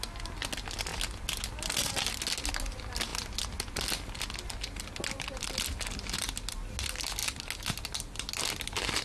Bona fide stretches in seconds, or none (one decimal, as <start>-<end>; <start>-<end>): 0.0-9.0